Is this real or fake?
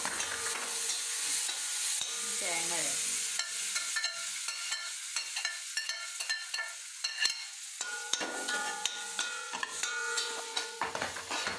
fake